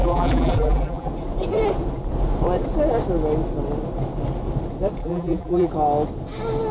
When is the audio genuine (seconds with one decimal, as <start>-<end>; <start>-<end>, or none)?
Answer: 1.1-5.0; 5.7-6.7